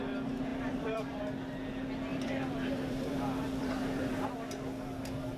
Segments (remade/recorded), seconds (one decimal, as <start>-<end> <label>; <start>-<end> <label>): 0.0-0.5 recorded; 0.5-1.2 remade; 1.2-2.1 recorded; 2.1-4.1 remade; 4.1-5.4 recorded